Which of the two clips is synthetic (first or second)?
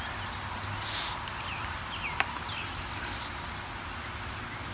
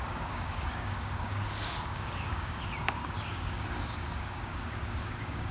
second